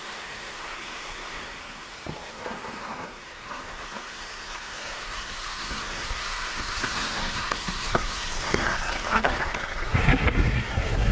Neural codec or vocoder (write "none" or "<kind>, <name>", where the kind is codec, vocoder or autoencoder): codec, SNAC